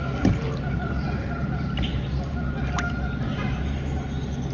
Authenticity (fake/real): real